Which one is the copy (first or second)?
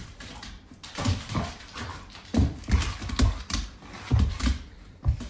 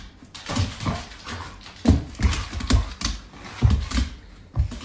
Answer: first